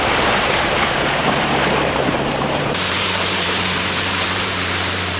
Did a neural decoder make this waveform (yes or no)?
yes